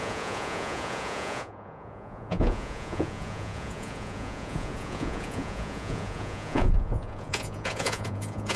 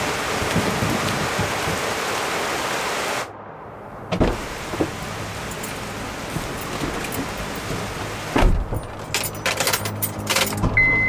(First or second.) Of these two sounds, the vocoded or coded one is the first